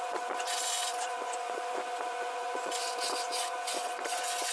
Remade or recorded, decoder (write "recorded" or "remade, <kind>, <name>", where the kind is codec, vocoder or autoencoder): remade, vocoder, Vocos